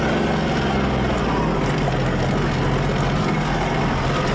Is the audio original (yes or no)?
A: yes